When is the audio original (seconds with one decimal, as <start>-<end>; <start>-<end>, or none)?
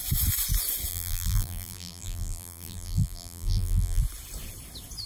0.0-0.9; 4.0-5.1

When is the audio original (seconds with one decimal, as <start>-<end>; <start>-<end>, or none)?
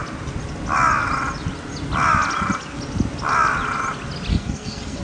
0.0-4.3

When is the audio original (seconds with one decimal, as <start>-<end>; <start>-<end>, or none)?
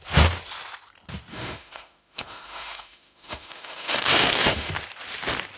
0.0-1.3; 4.7-5.6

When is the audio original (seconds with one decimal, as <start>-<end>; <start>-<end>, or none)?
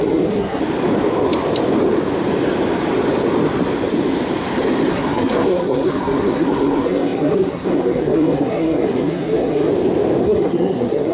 0.6-4.9; 9.7-10.2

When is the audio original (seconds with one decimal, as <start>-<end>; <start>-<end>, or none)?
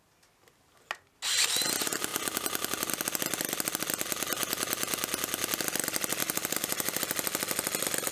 0.0-6.2; 7.0-8.1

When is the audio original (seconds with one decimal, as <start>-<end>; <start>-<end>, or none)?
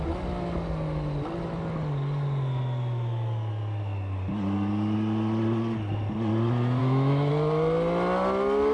0.0-6.8; 7.3-8.7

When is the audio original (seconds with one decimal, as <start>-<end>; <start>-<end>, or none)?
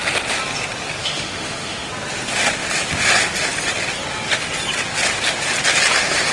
0.0-1.0; 1.9-6.3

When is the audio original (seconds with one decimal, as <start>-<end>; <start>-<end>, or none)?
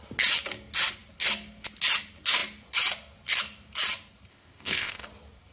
0.0-4.3; 5.0-5.5